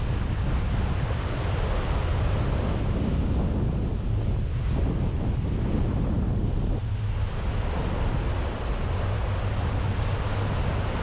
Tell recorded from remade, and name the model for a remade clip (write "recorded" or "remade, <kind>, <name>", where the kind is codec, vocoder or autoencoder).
recorded